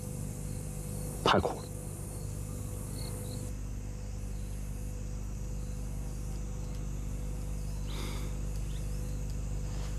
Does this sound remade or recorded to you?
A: recorded